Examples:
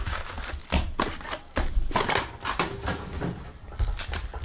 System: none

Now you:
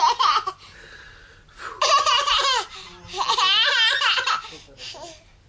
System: none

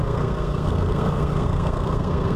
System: codec, SNAC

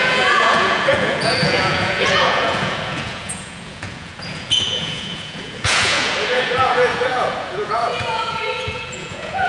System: vocoder, Vocos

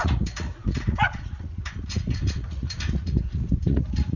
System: vocoder, Vocos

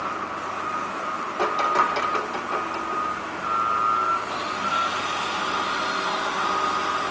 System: none